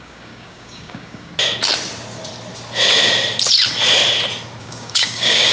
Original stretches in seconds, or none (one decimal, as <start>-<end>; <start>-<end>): 1.3-4.6